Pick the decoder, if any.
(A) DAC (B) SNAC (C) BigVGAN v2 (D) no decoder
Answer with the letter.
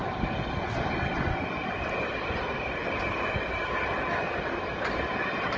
D